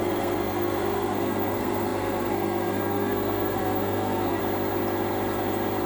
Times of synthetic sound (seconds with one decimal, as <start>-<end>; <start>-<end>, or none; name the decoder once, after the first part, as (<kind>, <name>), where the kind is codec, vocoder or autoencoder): 0.0-4.4 (codec, SNAC)